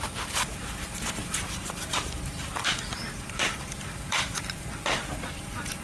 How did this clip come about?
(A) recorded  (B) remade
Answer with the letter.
B